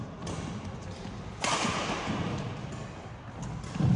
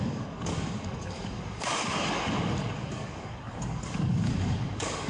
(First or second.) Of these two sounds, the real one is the first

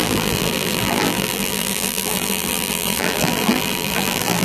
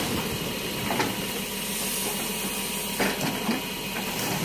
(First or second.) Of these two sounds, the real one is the second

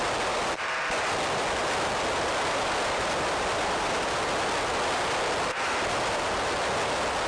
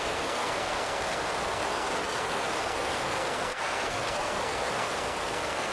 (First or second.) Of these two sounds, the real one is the first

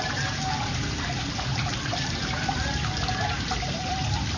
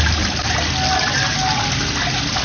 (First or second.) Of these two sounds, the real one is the second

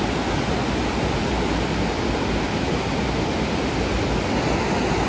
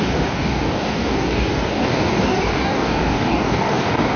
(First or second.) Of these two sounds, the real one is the first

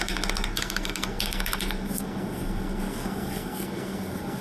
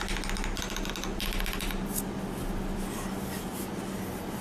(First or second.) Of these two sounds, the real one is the second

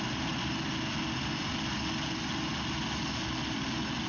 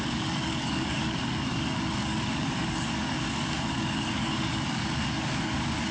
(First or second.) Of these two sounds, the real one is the first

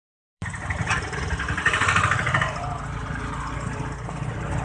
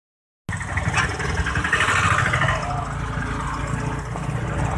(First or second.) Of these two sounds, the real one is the second